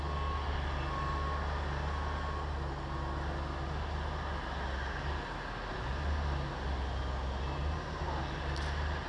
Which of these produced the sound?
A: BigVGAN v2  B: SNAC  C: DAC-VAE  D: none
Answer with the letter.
D